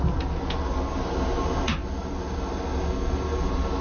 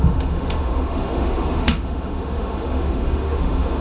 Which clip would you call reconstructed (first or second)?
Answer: second